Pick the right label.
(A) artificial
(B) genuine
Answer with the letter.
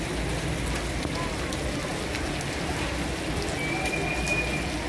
B